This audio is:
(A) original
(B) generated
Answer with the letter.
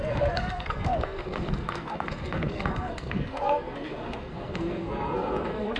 B